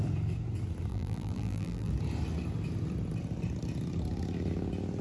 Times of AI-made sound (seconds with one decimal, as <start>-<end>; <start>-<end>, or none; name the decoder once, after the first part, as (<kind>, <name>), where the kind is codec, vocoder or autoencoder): 0.9-1.9 (vocoder, BigVGAN v2)